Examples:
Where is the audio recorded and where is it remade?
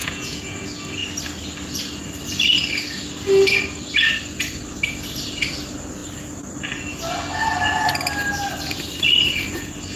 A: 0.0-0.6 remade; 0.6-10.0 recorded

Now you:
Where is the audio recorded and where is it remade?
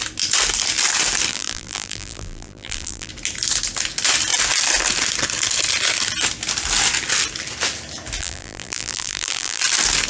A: 0.0-1.3 recorded; 1.3-3.1 remade; 3.1-8.2 recorded; 8.2-9.6 remade; 9.6-10.1 recorded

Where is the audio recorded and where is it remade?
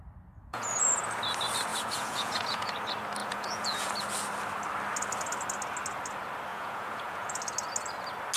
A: 0.0-0.5 recorded; 0.5-1.0 remade; 1.0-1.7 recorded; 1.7-2.7 remade; 2.7-3.2 recorded; 3.2-3.9 remade; 3.9-6.5 recorded; 6.5-7.4 remade; 7.4-8.4 recorded